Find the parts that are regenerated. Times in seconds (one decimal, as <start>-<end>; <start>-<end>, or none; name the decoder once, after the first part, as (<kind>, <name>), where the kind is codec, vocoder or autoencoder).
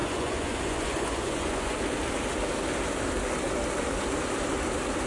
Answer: 0.0-1.8 (vocoder, Vocos)